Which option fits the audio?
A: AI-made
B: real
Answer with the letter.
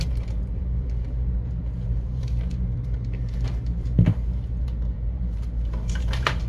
A